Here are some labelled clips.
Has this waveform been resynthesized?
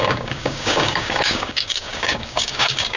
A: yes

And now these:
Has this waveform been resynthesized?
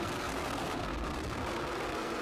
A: yes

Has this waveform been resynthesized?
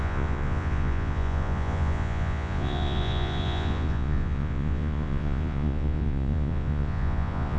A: yes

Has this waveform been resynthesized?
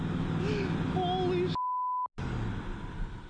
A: no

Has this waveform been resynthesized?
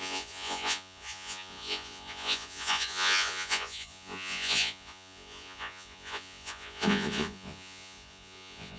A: yes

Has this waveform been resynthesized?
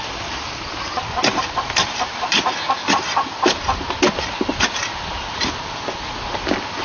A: no